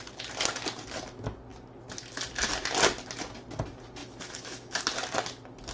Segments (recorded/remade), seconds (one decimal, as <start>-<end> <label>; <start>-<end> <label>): 0.0-4.0 recorded; 4.0-4.8 remade; 4.8-5.7 recorded